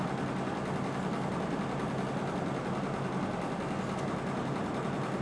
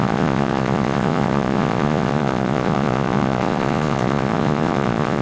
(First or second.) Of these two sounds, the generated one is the second